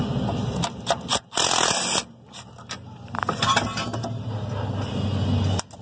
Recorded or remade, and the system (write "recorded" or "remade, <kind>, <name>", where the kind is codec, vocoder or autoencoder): recorded